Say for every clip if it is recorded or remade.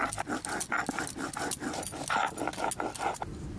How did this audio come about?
recorded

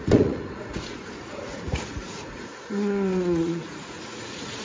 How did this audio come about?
remade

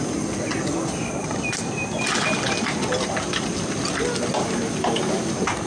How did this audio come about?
recorded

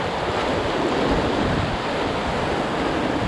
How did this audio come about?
recorded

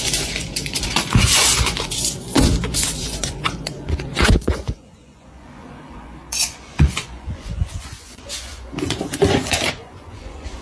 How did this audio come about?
remade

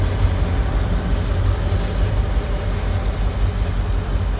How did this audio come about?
recorded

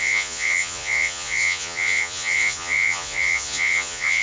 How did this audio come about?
remade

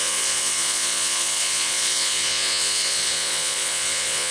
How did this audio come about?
remade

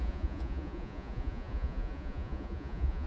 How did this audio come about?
remade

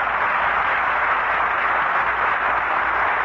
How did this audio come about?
recorded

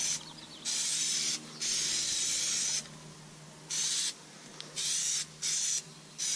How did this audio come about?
recorded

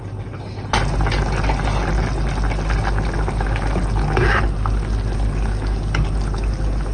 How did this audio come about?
recorded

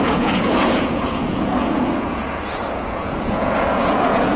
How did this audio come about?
remade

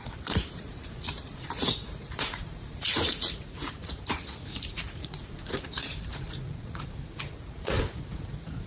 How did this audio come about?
remade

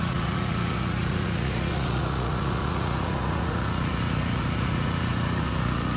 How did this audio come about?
remade